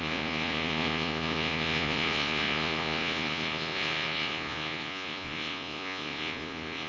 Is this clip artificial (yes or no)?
yes